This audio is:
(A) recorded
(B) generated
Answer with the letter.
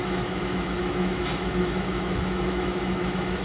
B